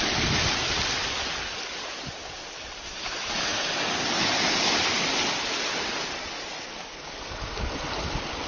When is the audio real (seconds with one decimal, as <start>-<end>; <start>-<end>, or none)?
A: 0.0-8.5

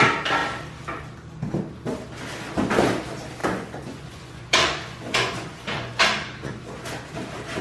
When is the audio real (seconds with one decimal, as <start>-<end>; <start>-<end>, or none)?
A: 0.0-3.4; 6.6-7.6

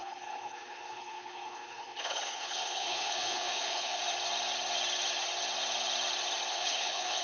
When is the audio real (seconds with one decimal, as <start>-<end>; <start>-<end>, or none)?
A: 4.0-6.5